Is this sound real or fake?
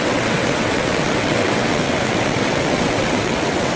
fake